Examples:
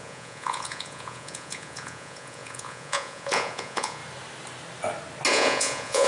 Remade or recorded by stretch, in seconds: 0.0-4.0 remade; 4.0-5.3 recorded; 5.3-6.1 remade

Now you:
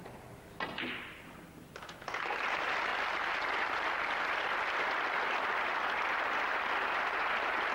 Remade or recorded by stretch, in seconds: 0.0-2.9 recorded; 2.9-6.2 remade; 6.2-7.7 recorded

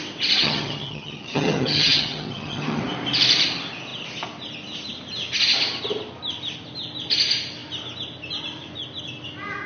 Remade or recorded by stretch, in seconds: 0.0-0.4 recorded; 0.4-2.8 remade; 2.8-9.7 recorded

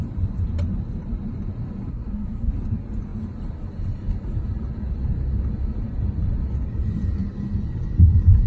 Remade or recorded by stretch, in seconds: 0.0-1.9 recorded; 1.9-2.5 remade; 2.5-8.5 recorded

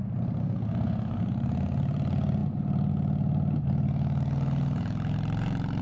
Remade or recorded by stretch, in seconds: 0.0-0.4 recorded; 0.4-1.2 remade; 1.2-5.8 recorded

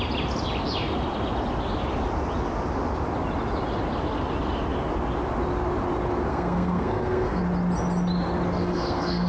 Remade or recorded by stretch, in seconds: 0.0-6.3 recorded; 6.3-7.4 remade; 7.4-8.6 recorded; 8.6-9.3 remade

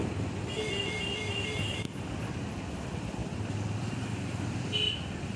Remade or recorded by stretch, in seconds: 0.0-5.4 recorded